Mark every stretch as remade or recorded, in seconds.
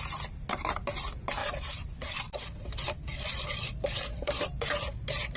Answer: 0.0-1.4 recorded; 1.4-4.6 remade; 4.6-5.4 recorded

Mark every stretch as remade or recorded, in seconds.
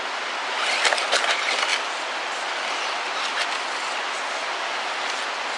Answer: 0.0-5.6 recorded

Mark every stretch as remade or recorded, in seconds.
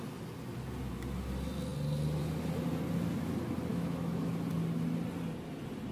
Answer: 0.0-3.7 recorded; 3.7-4.2 remade; 4.2-5.9 recorded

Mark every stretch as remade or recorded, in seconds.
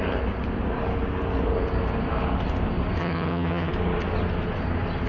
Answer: 0.0-3.0 recorded; 3.0-3.7 remade; 3.7-5.1 recorded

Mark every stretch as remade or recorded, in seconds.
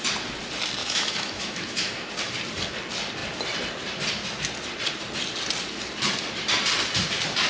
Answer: 0.0-0.8 recorded; 0.8-2.1 remade; 2.1-7.5 recorded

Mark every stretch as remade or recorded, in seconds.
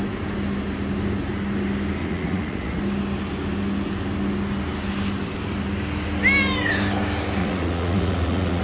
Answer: 0.0-2.0 recorded; 2.0-2.8 remade; 2.8-7.4 recorded; 7.4-8.6 remade